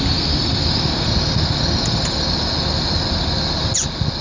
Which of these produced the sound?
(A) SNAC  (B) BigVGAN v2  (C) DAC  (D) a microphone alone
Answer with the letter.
D